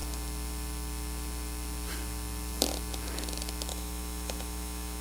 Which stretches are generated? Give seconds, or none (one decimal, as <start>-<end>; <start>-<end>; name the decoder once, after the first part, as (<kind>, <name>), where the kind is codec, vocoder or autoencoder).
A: 3.7-5.0 (autoencoder, DAC-VAE)